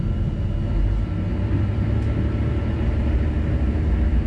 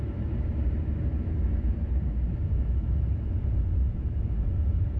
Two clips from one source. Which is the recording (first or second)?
first